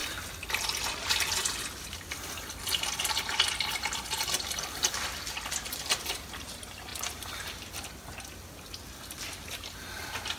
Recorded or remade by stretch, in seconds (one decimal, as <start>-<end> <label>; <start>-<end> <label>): 0.0-10.4 recorded